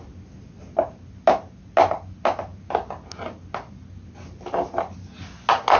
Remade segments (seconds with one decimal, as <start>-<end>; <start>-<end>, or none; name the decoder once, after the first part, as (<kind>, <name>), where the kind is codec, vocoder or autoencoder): none

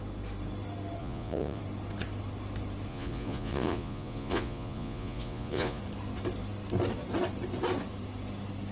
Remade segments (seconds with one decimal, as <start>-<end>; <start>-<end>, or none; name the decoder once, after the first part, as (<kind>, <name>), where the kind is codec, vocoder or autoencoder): 1.0-1.6 (vocoder, Vocos); 2.9-5.8

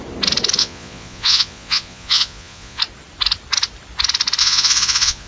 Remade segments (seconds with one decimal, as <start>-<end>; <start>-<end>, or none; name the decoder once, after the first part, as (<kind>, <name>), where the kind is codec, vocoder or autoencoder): 0.6-2.8 (vocoder, Vocos); 4.4-5.3

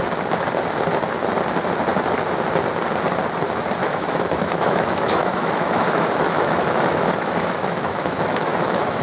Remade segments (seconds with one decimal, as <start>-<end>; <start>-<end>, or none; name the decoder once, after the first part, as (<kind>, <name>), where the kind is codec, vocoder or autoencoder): 3.8-9.0 (autoencoder, DAC-VAE)

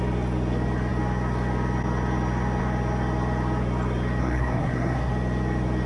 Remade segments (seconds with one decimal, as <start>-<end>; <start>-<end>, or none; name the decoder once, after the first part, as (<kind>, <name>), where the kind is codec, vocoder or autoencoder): 4.2-5.1 (codec, SNAC)

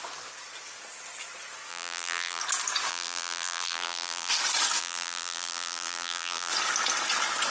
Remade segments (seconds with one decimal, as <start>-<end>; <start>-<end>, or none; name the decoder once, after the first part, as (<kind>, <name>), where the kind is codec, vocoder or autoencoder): 1.7-2.4 (vocoder, BigVGAN v2); 2.9-4.3; 4.8-6.5

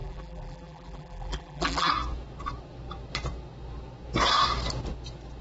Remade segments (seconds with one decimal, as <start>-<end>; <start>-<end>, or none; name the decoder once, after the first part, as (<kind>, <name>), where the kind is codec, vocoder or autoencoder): 0.0-1.9 (vocoder, BigVGAN v2)

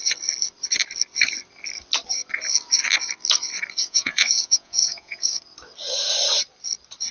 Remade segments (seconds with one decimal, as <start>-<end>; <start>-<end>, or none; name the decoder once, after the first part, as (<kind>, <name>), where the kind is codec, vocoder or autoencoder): 3.8-5.4 (vocoder, Vocos)